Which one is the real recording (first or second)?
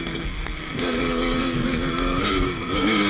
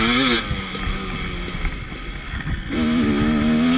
second